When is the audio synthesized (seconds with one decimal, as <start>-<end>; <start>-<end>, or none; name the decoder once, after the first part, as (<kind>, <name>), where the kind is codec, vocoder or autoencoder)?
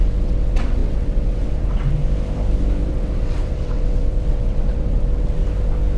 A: 0.0-2.0 (vocoder, WaveNeXt); 2.9-5.4